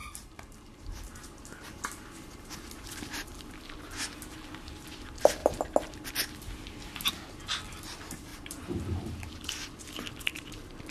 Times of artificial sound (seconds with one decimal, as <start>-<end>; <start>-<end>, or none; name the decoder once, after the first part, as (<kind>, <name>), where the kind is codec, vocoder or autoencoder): 0.0-1.4 (vocoder, BigVGAN v2); 8.3-9.2